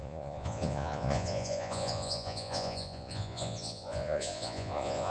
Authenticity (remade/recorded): remade